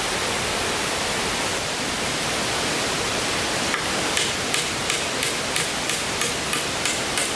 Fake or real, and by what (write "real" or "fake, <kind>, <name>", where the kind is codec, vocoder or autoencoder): real